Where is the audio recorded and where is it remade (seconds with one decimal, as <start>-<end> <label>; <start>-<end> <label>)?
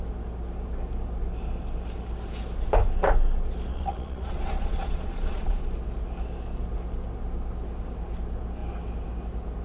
0.0-3.7 recorded; 3.7-5.6 remade; 5.6-9.6 recorded